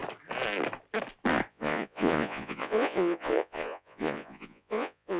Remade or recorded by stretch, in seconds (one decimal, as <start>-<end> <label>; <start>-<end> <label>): 0.0-1.5 recorded; 1.5-5.2 remade